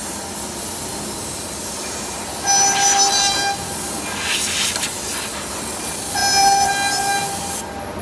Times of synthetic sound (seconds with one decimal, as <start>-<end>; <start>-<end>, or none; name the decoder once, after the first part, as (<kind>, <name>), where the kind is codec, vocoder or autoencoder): none